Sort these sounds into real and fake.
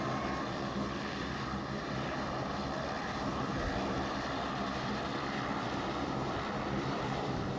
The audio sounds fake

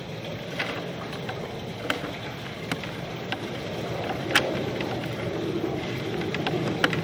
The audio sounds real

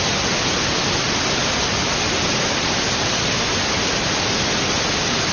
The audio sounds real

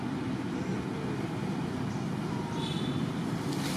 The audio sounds real